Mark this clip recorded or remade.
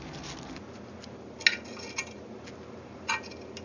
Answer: recorded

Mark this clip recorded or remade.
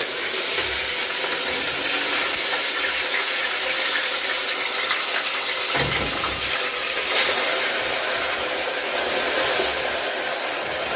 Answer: recorded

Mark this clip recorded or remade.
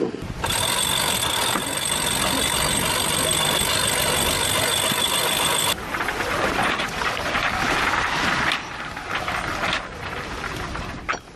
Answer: recorded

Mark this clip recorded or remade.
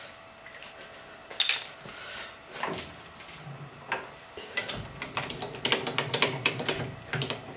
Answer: recorded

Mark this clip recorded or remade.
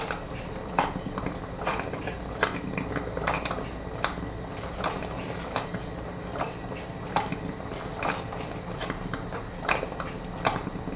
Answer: recorded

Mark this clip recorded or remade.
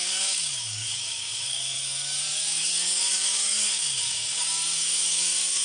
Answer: remade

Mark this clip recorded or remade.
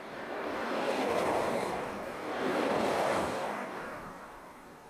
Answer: remade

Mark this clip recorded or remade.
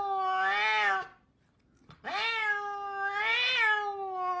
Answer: recorded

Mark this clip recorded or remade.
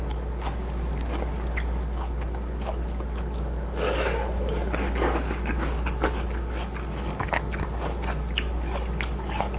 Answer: remade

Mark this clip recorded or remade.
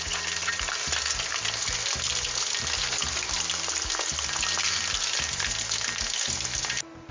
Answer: recorded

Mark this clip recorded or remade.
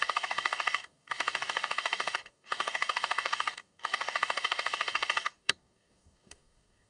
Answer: remade